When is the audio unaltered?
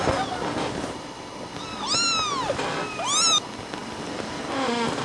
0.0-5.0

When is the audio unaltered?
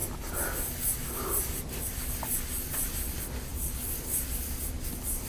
0.0-2.7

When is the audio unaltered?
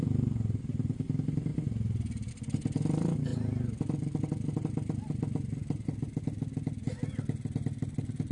0.0-8.3